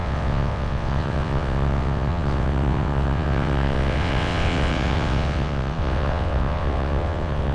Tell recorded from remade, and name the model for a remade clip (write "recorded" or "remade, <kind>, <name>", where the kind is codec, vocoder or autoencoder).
remade, vocoder, WaveNeXt